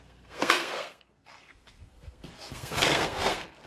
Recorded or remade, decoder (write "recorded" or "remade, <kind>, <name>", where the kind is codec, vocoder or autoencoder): remade, codec, SNAC